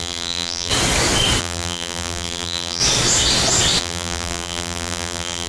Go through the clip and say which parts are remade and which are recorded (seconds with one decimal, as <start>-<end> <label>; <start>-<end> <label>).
0.0-0.7 remade; 0.7-1.4 recorded; 1.4-2.8 remade; 2.8-3.8 recorded; 3.8-5.5 remade